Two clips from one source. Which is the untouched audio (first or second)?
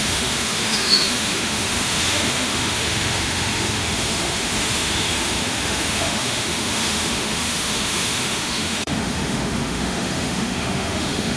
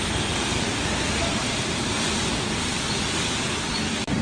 second